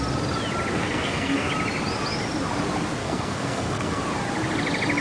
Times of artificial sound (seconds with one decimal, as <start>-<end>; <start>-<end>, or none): 0.7-1.5; 3.0-4.0